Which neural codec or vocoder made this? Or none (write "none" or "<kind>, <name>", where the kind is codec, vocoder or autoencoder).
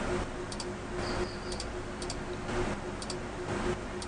none